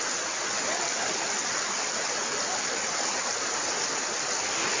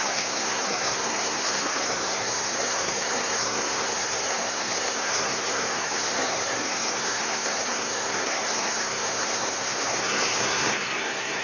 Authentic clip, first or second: first